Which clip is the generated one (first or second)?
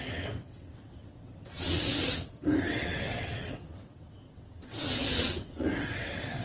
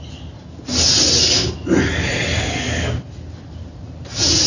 first